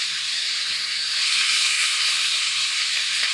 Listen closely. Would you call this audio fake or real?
fake